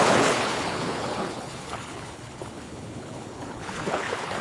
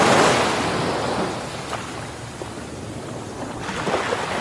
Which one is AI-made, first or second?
first